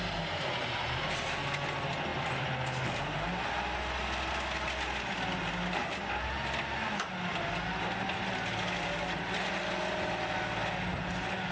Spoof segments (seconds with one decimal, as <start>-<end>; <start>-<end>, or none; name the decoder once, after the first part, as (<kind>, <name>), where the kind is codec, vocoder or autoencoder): none